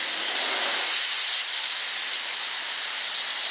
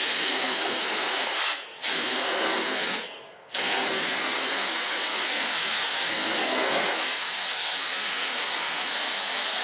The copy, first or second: second